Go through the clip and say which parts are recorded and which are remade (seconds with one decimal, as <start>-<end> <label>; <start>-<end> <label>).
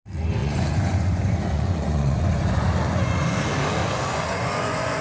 0.0-0.4 recorded; 0.4-3.4 remade; 3.4-3.8 recorded; 3.8-5.0 remade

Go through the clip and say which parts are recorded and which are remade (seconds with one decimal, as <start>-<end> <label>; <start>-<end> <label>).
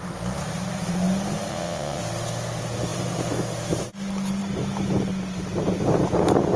0.0-1.5 recorded; 1.5-2.0 remade; 2.0-6.6 recorded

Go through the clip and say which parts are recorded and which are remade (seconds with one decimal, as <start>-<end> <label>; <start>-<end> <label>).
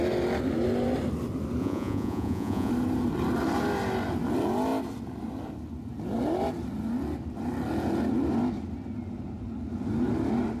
0.0-1.6 recorded; 1.6-2.7 remade; 2.7-10.6 recorded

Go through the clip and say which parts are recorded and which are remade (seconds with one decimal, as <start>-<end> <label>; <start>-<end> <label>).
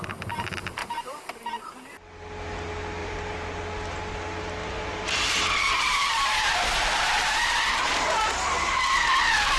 0.0-0.8 recorded; 0.8-1.6 remade; 1.6-3.0 recorded; 3.0-3.6 remade; 3.6-4.6 recorded; 4.6-8.9 remade; 8.9-9.6 recorded